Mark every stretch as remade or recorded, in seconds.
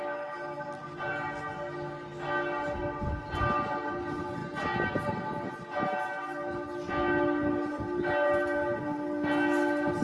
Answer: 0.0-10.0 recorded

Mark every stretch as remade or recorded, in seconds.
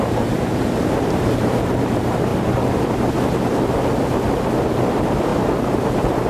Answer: 0.0-2.3 remade; 2.3-4.8 recorded; 4.8-6.3 remade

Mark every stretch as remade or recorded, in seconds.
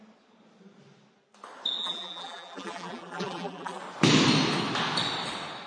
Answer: 0.0-1.8 recorded; 1.8-3.8 remade; 3.8-5.7 recorded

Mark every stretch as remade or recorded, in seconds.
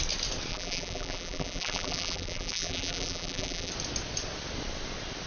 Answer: 0.0-0.5 recorded; 0.5-3.7 remade; 3.7-5.3 recorded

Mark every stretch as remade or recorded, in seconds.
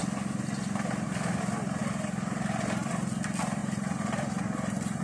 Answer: 0.0-1.8 recorded; 1.8-2.9 remade; 2.9-3.6 recorded; 3.6-5.0 remade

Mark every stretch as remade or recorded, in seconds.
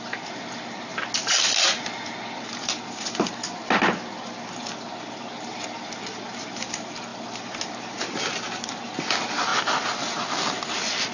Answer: 0.0-11.1 recorded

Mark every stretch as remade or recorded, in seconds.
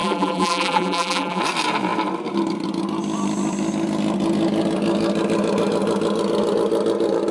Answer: 0.0-1.4 remade; 1.4-7.3 recorded